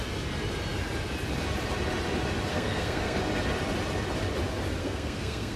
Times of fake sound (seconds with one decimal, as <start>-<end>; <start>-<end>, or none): 2.5-3.2; 4.8-5.6